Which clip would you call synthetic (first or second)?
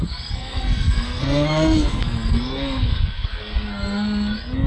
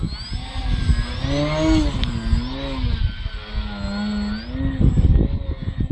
first